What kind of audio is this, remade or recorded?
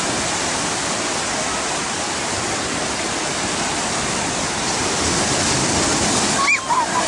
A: recorded